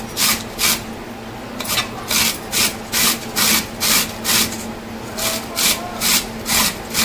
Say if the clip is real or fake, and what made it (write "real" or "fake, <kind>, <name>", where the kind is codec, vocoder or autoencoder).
real